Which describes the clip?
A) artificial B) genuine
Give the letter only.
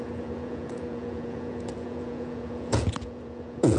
A